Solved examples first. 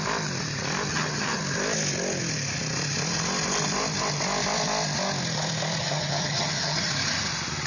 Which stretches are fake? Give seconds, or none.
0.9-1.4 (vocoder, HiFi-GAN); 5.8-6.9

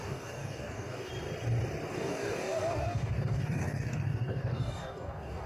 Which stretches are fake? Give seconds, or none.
0.0-1.1 (codec, DAC); 1.9-5.5

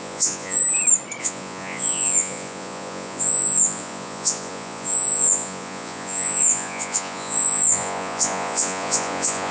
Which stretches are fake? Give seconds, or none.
0.0-0.6 (vocoder, Vocos); 1.2-9.5

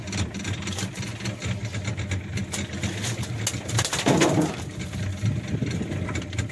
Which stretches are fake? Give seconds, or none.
none

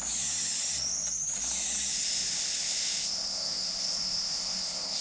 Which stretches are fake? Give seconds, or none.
1.9-5.0 (codec, ZipCodec)

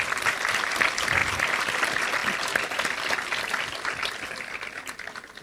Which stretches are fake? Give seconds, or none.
none

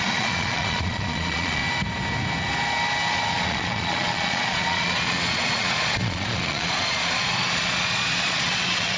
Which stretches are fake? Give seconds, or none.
0.0-1.6 (vocoder, Vocos); 3.1-9.0